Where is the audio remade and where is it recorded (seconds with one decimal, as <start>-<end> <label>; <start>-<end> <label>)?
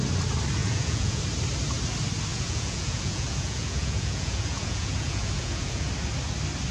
0.0-0.6 recorded; 0.6-1.2 remade; 1.2-2.3 recorded; 2.3-5.9 remade; 5.9-6.7 recorded